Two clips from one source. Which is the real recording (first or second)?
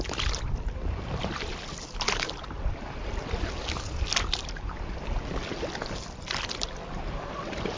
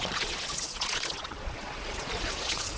first